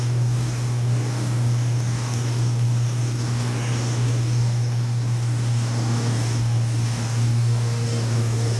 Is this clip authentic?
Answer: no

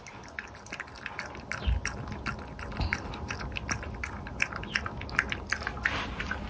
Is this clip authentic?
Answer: yes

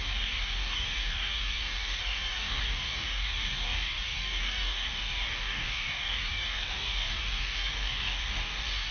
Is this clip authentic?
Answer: no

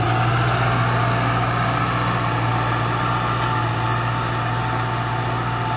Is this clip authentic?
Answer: yes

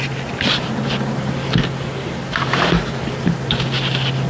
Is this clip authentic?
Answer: yes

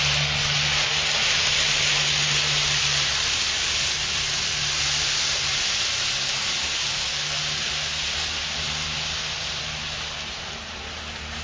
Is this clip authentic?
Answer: yes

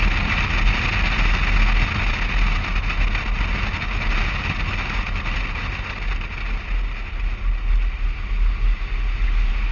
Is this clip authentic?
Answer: yes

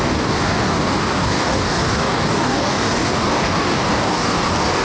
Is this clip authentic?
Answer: no